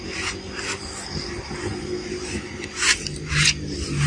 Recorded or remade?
recorded